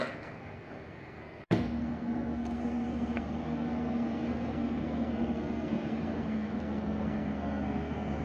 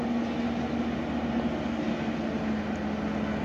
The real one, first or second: second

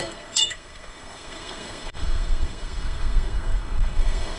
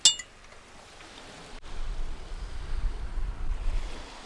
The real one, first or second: second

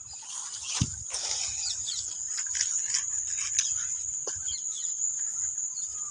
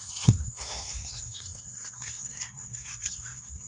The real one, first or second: first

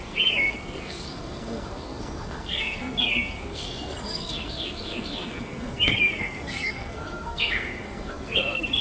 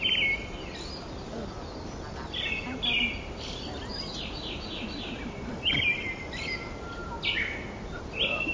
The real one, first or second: second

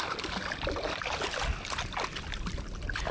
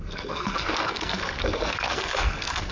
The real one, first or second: first